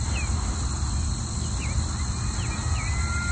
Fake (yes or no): no